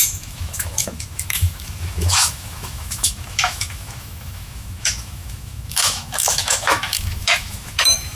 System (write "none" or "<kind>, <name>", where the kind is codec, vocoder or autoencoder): autoencoder, DAC-VAE